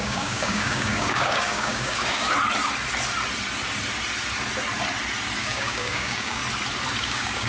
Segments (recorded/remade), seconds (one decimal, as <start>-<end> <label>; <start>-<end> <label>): 0.0-2.3 remade; 2.3-5.4 recorded; 5.4-6.4 remade; 6.4-7.0 recorded; 7.0-7.5 remade